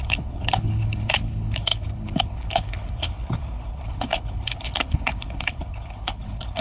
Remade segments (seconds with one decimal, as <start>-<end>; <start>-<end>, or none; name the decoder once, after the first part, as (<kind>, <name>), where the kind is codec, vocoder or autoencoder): 0.0-6.6 (codec, HILCodec)